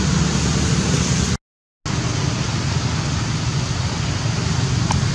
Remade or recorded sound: recorded